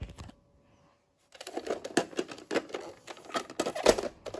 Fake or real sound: real